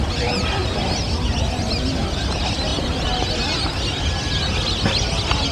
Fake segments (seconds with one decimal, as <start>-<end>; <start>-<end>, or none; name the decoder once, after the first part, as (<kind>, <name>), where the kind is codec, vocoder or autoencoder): none

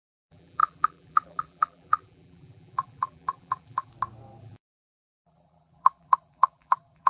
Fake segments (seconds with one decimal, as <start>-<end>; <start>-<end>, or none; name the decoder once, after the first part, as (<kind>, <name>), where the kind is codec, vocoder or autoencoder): 0.0-3.9 (vocoder, BigVGAN v2); 4.4-7.1

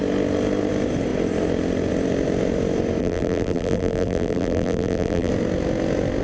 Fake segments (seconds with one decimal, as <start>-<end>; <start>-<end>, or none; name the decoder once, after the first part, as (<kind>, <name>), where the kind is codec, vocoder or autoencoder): 3.0-5.3 (vocoder, BigVGAN v2)

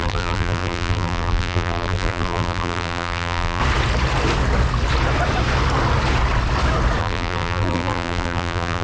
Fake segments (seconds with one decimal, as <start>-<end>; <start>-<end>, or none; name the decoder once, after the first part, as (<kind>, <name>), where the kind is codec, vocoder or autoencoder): 0.0-3.6 (vocoder, BigVGAN v2); 7.0-8.8

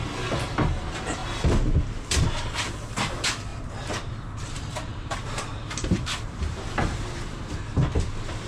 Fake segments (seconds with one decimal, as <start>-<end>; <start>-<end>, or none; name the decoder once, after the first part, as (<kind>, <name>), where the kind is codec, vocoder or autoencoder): 3.5-7.4 (vocoder, BigVGAN v2)